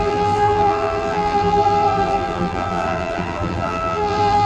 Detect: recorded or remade remade